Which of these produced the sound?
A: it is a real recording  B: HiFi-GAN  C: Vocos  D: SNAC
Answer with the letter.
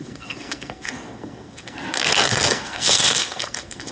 D